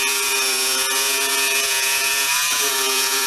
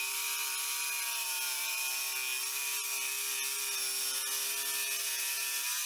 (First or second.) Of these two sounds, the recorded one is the second